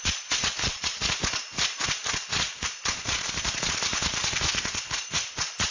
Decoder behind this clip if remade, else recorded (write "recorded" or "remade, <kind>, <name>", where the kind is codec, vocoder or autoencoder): remade, vocoder, Vocos